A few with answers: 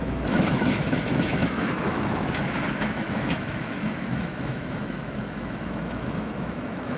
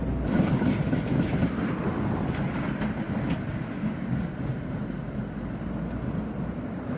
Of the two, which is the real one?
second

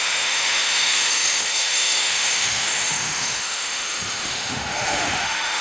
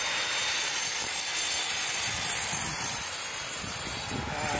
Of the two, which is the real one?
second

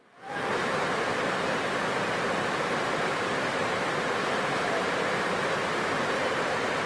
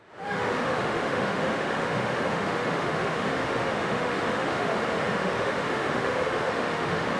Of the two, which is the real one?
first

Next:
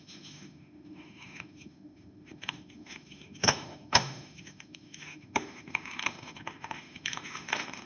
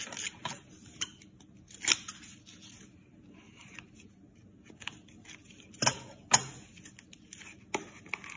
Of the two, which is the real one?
second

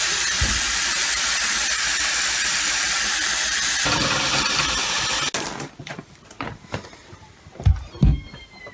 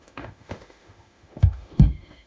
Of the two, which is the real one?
first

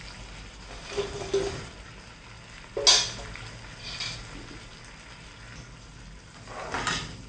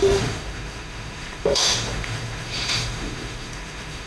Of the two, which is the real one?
first